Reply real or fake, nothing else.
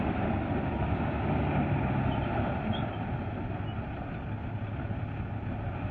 real